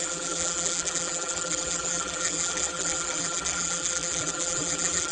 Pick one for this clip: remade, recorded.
remade